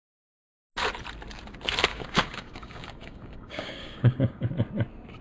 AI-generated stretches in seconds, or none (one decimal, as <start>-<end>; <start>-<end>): 1.9-4.5